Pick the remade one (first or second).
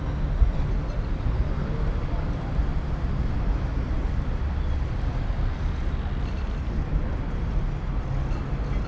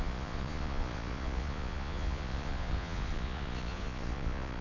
second